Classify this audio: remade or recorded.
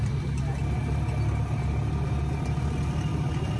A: recorded